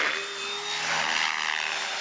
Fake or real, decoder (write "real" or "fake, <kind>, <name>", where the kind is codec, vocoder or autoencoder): real